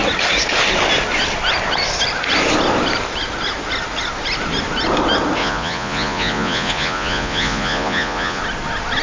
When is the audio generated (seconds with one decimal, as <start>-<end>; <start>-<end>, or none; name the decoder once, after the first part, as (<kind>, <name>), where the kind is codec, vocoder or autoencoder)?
5.4-8.4 (vocoder, Vocos)